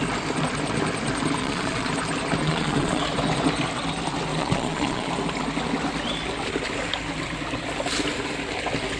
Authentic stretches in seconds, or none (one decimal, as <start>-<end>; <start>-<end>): 0.0-1.4; 1.9-2.4; 3.0-4.3; 5.1-9.0